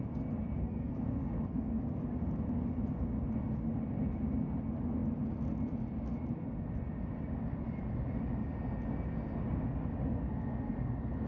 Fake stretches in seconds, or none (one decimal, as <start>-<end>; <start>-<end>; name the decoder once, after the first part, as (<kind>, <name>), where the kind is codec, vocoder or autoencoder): 0.6-1.8 (codec, SNAC)